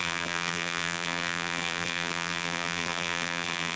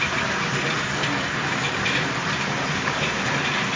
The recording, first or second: second